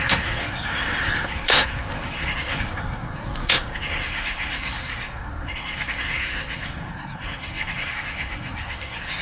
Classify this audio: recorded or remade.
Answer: remade